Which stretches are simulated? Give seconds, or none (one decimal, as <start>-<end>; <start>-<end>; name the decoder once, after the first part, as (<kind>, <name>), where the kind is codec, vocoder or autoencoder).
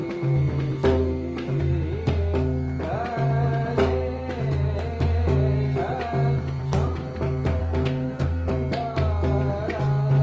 7.6-8.5 (codec, SNAC)